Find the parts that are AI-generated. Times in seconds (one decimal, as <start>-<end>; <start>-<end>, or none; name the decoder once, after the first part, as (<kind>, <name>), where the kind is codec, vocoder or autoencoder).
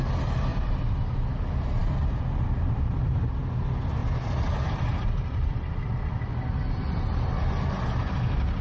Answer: 0.5-1.1 (vocoder, BigVGAN v2); 1.8-3.1; 4.0-7.4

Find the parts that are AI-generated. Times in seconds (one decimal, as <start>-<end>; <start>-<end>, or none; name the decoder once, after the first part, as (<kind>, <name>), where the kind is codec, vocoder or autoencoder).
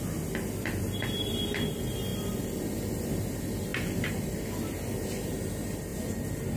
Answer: 2.1-3.3 (vocoder, BigVGAN v2); 3.7-4.4; 5.9-6.6